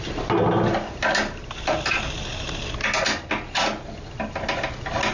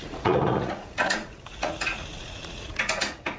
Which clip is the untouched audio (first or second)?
first